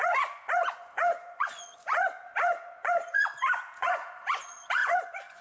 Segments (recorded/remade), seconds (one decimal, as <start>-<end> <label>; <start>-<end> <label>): 0.0-5.4 remade